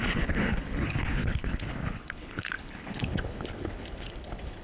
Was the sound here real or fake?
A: fake